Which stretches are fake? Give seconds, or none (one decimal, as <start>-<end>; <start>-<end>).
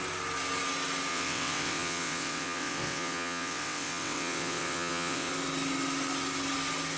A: 1.1-5.3